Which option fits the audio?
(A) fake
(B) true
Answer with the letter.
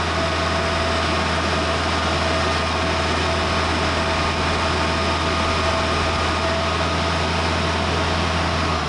B